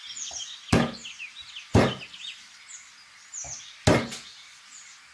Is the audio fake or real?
real